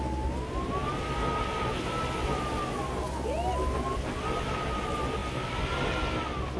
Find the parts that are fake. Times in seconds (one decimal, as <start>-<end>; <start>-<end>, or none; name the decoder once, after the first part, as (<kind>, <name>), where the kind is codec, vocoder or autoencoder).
none